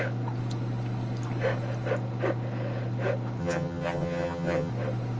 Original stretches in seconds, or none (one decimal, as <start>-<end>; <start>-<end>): 0.0-3.4; 4.7-5.2